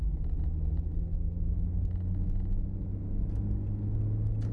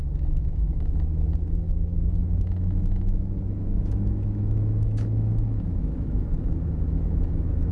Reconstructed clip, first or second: second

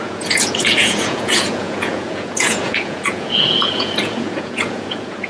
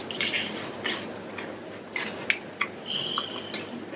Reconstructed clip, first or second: first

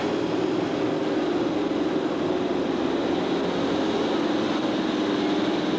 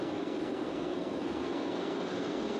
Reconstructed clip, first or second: second